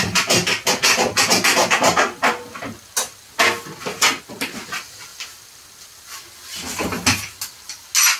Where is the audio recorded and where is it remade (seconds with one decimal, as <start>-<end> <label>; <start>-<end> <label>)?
0.0-8.2 recorded